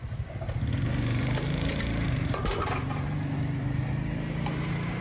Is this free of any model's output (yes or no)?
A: no